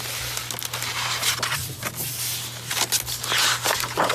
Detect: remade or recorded recorded